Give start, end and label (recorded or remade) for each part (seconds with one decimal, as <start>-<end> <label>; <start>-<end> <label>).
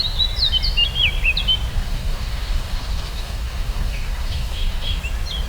0.0-1.7 recorded; 1.7-5.0 remade; 5.0-5.5 recorded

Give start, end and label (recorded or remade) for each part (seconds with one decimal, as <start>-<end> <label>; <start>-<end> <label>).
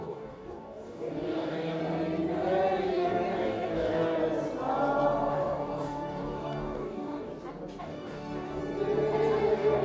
0.0-1.8 remade; 1.8-2.8 recorded; 2.8-4.2 remade; 4.2-5.3 recorded; 5.3-7.3 remade; 7.3-7.8 recorded; 7.8-8.6 remade; 8.6-9.4 recorded; 9.4-9.8 remade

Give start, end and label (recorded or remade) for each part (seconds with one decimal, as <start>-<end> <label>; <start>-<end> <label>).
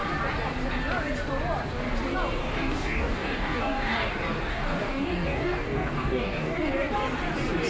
0.0-2.4 recorded; 2.4-4.1 remade; 4.1-4.5 recorded; 4.5-6.7 remade; 6.7-7.7 recorded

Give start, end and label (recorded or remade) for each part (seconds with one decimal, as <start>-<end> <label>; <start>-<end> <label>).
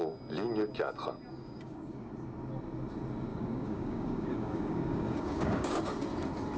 0.0-1.3 recorded; 1.3-2.1 remade; 2.1-3.3 recorded; 3.3-5.8 remade; 5.8-6.6 recorded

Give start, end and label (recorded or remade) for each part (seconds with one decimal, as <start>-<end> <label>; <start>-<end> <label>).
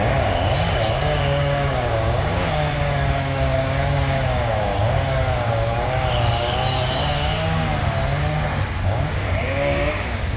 0.0-7.8 remade; 7.8-8.8 recorded; 8.8-10.4 remade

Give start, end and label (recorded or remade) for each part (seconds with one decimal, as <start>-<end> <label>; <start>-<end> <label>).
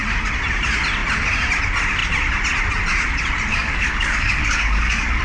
0.0-3.5 recorded; 3.5-5.2 remade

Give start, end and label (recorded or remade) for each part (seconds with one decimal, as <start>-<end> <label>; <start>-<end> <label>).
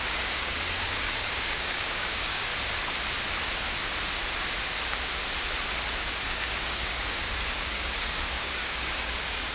0.0-2.5 remade; 2.5-6.2 recorded; 6.2-9.5 remade